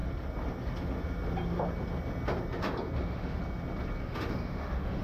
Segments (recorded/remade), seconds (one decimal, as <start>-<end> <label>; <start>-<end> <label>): 0.0-3.0 recorded; 3.0-3.4 remade; 3.4-4.0 recorded; 4.0-5.0 remade